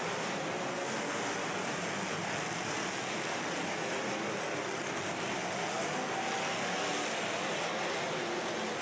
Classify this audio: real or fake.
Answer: real